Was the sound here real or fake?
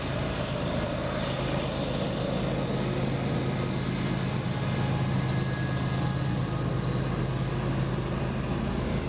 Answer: real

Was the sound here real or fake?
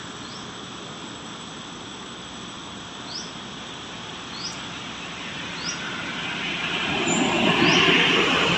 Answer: real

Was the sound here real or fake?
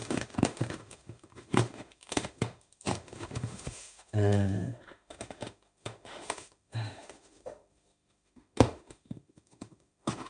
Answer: fake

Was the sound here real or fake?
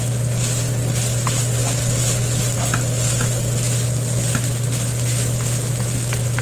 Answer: real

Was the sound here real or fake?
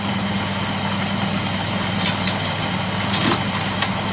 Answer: real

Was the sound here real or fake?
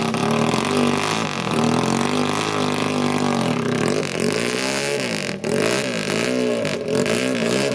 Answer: real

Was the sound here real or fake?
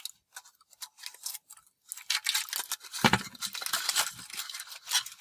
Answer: real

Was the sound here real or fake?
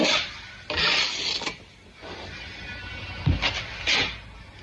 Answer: real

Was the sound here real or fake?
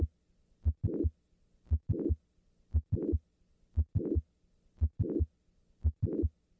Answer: real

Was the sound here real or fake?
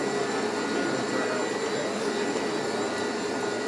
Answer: real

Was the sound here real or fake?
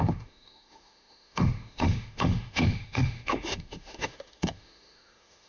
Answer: fake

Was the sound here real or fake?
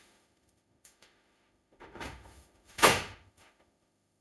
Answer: fake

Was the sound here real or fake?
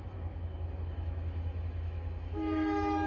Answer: fake